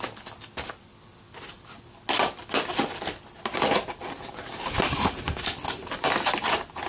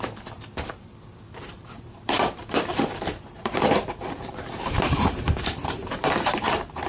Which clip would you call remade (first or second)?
second